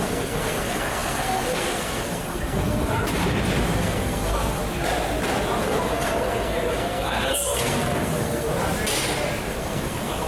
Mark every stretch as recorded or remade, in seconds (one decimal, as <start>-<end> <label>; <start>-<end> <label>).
0.0-3.2 remade; 3.2-3.8 recorded; 3.8-4.6 remade; 4.6-5.6 recorded; 5.6-8.5 remade; 8.5-9.5 recorded; 9.5-10.3 remade